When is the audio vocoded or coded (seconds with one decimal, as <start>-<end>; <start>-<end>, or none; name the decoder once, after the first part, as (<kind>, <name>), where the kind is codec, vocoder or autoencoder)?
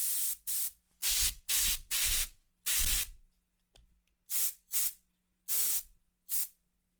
2.0-2.5 (autoencoder, DAC-VAE)